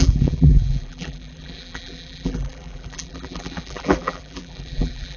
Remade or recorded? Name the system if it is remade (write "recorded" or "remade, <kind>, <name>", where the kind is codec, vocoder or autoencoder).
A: remade, vocoder, BigVGAN v2